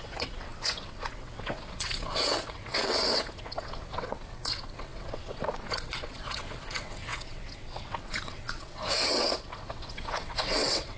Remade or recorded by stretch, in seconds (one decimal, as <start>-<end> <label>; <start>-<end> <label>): 0.0-11.0 remade